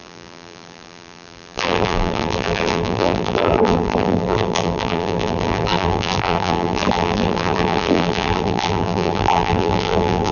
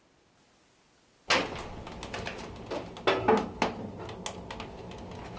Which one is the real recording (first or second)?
second